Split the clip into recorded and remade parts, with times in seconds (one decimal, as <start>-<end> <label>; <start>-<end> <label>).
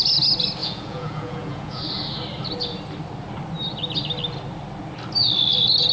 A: 0.0-0.6 recorded; 0.6-1.8 remade; 1.8-5.9 recorded